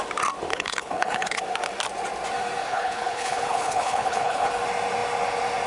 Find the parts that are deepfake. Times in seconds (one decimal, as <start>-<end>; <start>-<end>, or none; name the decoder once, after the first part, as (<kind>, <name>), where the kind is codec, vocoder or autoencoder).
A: 0.5-1.4 (codec, HILCodec); 2.6-4.5